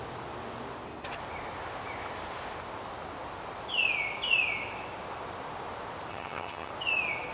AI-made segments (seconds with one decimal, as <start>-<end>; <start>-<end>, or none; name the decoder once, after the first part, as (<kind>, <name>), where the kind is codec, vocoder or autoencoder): 6.1-6.7 (vocoder, HiFi-GAN)